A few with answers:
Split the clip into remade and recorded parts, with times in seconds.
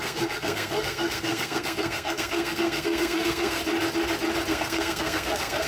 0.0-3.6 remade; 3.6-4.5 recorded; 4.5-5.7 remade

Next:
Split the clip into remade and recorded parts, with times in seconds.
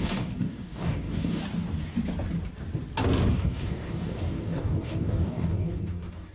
0.0-1.4 remade; 1.4-3.3 recorded; 3.3-6.3 remade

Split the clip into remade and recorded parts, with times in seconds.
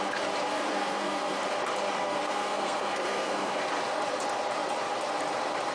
0.0-0.5 recorded; 0.5-1.4 remade; 1.4-2.0 recorded; 2.0-3.5 remade; 3.5-5.7 recorded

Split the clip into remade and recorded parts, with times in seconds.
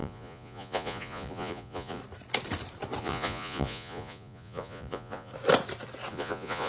0.0-2.0 remade; 2.0-3.0 recorded; 3.0-5.3 remade; 5.3-6.1 recorded; 6.1-6.7 remade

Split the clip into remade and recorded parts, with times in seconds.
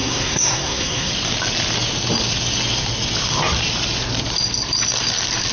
0.0-1.1 remade; 1.1-5.5 recorded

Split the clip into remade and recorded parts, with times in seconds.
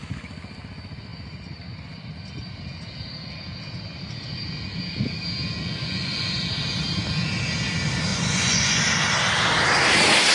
0.0-5.6 recorded; 5.6-6.4 remade; 6.4-8.1 recorded; 8.1-8.8 remade; 8.8-10.3 recorded